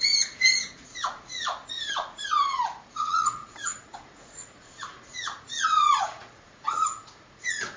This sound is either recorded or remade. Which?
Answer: remade